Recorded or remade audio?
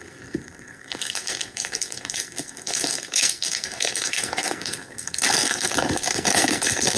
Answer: remade